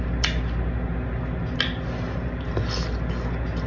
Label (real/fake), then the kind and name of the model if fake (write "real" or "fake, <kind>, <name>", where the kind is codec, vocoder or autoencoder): real